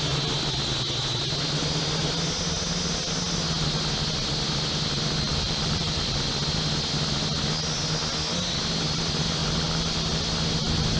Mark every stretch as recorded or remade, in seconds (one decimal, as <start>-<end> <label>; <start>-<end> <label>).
0.0-5.3 recorded; 5.3-6.3 remade; 6.3-9.4 recorded; 9.4-10.2 remade; 10.2-11.0 recorded